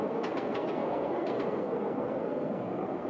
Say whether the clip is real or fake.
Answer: fake